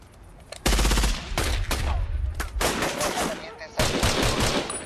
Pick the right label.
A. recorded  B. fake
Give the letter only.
A